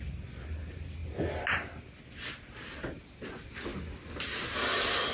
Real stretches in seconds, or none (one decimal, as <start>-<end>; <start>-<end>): 0.0-5.1

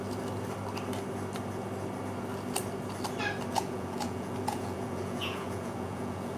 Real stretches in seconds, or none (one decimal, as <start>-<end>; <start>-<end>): 0.0-3.5

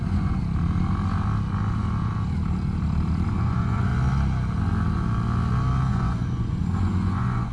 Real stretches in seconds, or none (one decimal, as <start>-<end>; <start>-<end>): 0.4-3.3; 3.9-5.9